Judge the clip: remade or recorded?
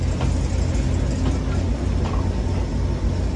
recorded